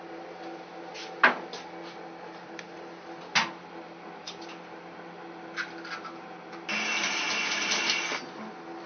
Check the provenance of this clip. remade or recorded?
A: recorded